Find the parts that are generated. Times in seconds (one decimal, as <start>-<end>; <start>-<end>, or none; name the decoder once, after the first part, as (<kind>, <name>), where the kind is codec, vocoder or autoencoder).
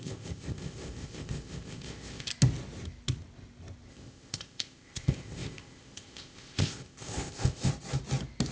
0.0-2.3 (codec, ZipCodec); 3.9-7.7